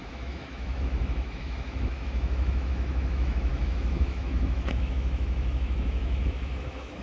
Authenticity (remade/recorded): remade